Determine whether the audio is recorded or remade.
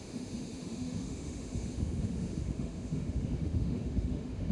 remade